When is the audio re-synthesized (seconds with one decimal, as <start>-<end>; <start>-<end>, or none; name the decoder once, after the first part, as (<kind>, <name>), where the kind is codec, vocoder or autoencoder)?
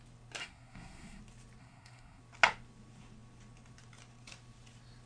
0.4-1.2 (codec, SNAC); 1.6-2.2